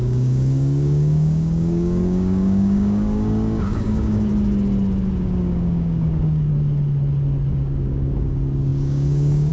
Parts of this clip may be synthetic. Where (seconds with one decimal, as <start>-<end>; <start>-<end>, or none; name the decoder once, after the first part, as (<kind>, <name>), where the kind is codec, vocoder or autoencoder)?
0.0-4.3 (codec, DAC); 5.2-6.5; 7.5-9.5